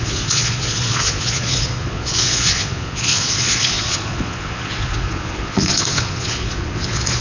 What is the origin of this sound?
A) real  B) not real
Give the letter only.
B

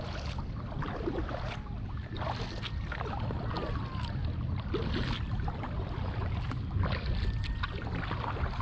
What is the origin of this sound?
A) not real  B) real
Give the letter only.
B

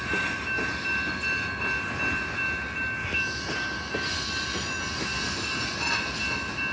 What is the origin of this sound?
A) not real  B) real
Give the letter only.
B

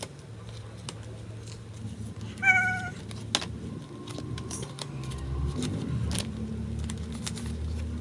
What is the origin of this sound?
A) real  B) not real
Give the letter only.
A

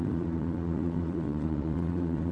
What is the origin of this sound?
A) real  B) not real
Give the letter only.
B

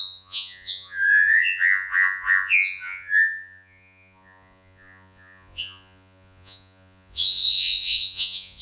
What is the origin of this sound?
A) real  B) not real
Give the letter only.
B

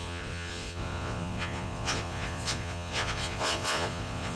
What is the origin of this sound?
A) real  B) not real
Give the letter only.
B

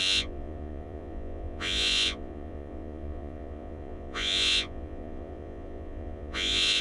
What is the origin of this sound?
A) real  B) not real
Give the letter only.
B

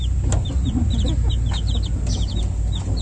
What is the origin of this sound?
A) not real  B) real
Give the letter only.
B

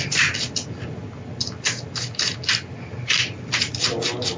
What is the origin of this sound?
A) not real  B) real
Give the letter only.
B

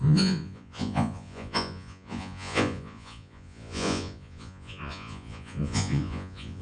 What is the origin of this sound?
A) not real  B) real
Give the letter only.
A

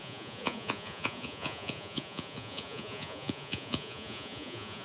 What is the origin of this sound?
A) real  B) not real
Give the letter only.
B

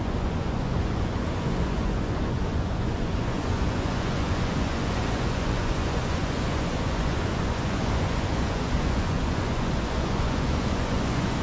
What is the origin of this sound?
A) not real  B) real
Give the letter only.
A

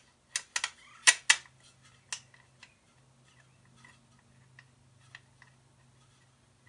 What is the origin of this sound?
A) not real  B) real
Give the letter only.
B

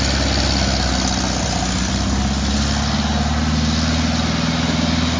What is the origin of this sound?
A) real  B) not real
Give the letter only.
A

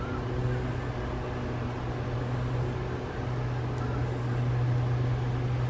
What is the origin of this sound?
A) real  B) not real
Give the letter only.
A